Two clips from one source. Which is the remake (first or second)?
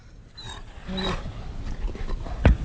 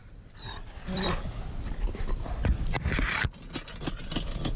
second